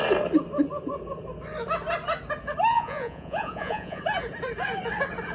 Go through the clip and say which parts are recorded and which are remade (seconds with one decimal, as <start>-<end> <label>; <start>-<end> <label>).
0.0-2.7 recorded; 2.7-4.0 remade; 4.0-5.3 recorded